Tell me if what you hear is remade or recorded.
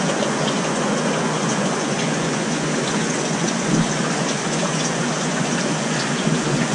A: remade